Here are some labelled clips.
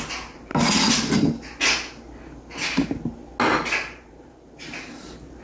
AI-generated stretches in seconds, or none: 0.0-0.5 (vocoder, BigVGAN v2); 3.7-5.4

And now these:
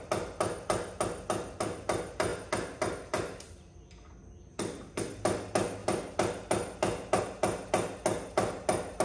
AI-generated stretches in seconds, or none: none

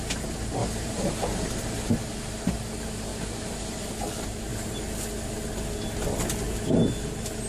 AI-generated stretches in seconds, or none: 0.6-1.9 (vocoder, BigVGAN v2); 3.1-3.9

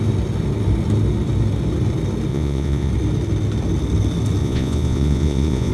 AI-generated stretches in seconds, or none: 2.3-2.9 (vocoder, Vocos); 4.4-5.7

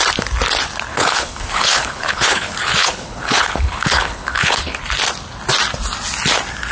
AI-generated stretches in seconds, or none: 0.9-4.8 (codec, HILCodec)

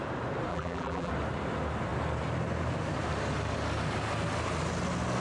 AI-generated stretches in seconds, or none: 0.5-1.1 (vocoder, BigVGAN v2)

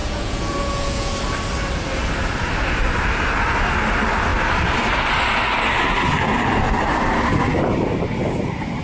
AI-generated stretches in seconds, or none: 0.0-1.1 (vocoder, Vocos)

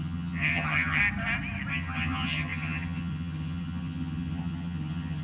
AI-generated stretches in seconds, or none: 0.0-1.0 (vocoder, HiFi-GAN); 1.7-5.2